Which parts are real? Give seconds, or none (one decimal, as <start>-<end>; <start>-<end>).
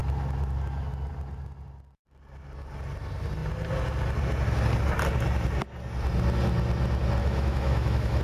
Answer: 0.0-7.2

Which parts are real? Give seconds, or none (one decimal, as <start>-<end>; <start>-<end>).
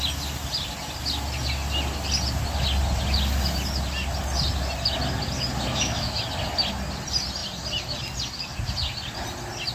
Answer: 0.0-5.7; 6.2-9.7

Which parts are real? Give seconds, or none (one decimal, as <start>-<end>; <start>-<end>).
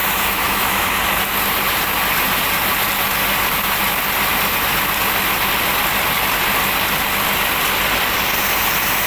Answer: 1.0-9.1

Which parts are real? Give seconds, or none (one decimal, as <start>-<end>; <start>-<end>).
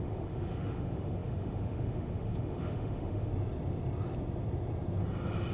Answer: 3.3-5.5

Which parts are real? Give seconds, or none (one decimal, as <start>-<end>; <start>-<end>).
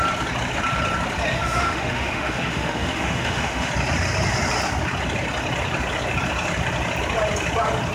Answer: 0.0-1.3; 3.7-7.9